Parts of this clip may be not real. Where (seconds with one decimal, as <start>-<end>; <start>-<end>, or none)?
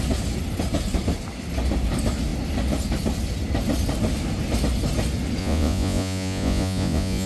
5.4-7.3